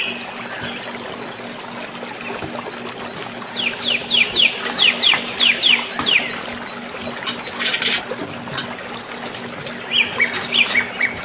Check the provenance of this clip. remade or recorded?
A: recorded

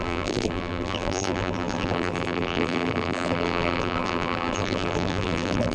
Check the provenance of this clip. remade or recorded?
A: remade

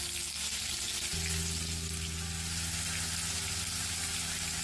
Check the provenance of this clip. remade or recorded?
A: recorded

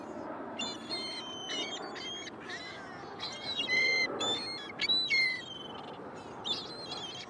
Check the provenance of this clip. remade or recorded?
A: recorded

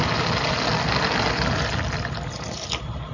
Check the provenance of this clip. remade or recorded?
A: recorded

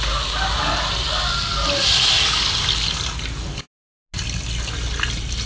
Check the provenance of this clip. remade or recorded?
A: recorded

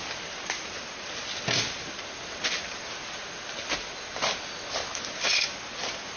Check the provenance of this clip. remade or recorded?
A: recorded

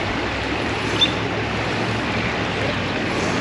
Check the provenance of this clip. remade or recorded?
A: recorded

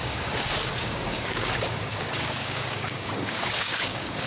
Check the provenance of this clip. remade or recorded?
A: remade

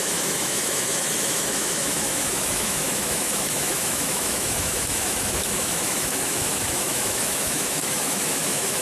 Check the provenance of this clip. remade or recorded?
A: remade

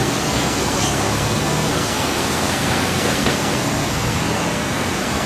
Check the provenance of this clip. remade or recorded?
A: remade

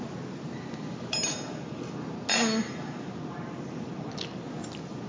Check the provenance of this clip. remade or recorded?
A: recorded